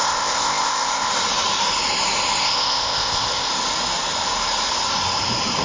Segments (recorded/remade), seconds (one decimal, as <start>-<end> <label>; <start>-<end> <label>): 0.0-1.1 remade; 1.1-2.4 recorded; 2.4-3.5 remade; 3.5-5.6 recorded